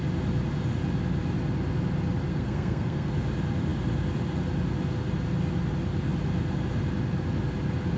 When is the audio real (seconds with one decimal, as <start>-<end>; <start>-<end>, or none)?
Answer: 0.0-2.3; 3.1-8.0